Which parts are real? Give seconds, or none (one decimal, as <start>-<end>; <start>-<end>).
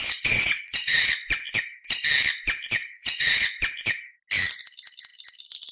1.1-2.8; 3.6-5.7